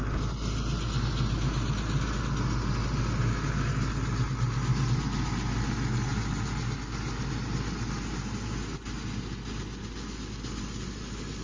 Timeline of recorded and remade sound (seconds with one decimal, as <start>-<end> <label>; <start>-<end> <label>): 0.0-11.4 recorded